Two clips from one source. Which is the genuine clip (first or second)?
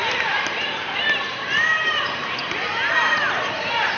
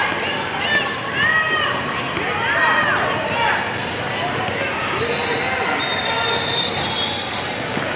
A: second